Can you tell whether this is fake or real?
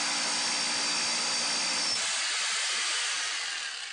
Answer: real